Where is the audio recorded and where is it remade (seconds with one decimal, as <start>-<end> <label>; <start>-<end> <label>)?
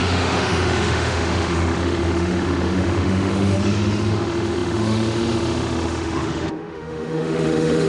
0.0-7.9 remade